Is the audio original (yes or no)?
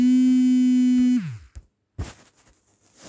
yes